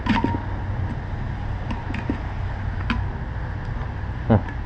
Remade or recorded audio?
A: recorded